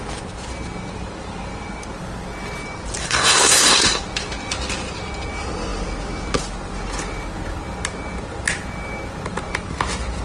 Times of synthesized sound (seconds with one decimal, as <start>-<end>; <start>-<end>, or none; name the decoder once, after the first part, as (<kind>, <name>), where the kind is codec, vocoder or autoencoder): 3.0-4.0 (codec, SNAC)

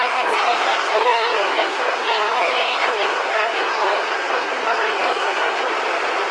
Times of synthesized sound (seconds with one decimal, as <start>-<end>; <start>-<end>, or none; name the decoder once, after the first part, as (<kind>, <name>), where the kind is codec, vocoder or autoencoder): 0.0-5.7 (codec, SNAC)